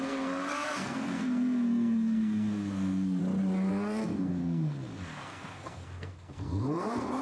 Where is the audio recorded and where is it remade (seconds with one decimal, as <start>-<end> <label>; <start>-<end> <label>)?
0.0-3.2 remade; 3.2-3.7 recorded; 3.7-7.2 remade